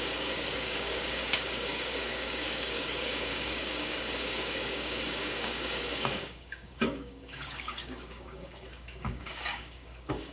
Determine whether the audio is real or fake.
fake